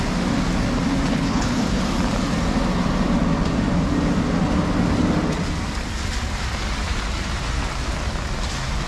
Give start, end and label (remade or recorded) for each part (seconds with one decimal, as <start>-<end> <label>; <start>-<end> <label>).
0.0-1.1 recorded; 1.1-1.8 remade; 1.8-8.9 recorded